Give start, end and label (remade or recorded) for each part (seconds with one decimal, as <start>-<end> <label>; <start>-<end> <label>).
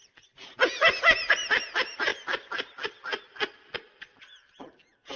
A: 0.0-5.2 recorded